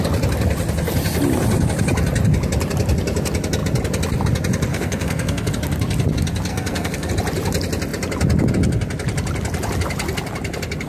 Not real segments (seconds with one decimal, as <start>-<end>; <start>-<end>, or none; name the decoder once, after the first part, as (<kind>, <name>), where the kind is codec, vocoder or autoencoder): 4.7-5.5 (codec, SNAC); 6.5-7.1